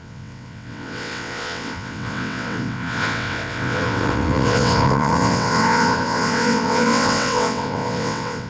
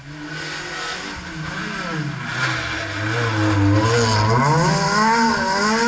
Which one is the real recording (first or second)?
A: second